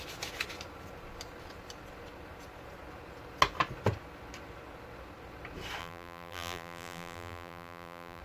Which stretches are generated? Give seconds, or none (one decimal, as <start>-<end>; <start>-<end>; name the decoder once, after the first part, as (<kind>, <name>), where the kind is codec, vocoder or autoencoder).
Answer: 5.8-8.2 (vocoder, BigVGAN v2)